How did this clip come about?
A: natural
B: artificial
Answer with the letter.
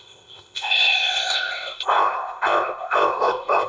B